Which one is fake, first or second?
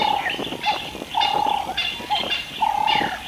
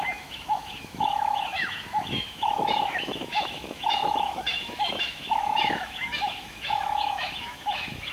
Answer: second